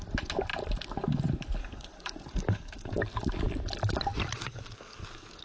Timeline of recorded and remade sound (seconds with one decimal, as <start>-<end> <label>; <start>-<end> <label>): 0.0-1.6 recorded; 1.6-3.0 remade; 3.0-4.4 recorded; 4.4-5.4 remade